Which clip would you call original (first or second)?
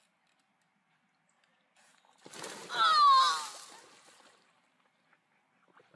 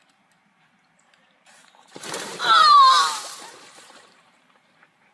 first